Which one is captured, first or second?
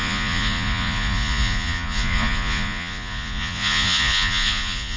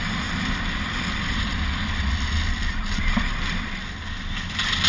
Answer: second